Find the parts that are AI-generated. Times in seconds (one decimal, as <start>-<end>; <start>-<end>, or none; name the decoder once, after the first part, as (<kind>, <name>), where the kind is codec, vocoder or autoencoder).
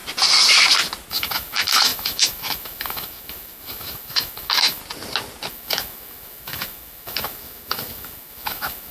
1.1-4.8 (autoencoder, DAC-VAE); 5.5-8.9